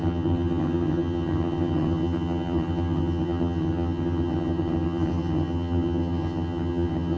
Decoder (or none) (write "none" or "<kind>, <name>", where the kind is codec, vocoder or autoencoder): vocoder, HiFi-GAN